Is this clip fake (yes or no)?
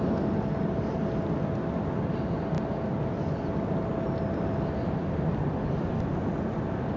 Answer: no